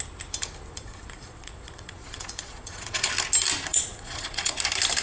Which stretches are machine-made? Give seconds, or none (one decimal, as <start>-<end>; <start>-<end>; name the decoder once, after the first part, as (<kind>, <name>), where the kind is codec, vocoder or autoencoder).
0.7-3.1 (vocoder, Vocos); 3.7-4.5